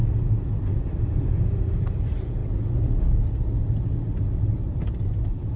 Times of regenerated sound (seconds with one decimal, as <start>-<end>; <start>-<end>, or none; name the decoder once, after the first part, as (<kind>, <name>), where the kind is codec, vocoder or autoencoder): 0.6-2.4 (vocoder, BigVGAN v2); 3.9-5.6